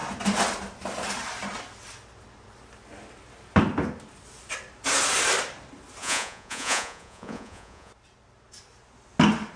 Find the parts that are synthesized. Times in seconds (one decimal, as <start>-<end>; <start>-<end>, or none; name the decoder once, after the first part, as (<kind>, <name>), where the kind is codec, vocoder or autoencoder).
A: 6.0-7.9 (vocoder, Vocos)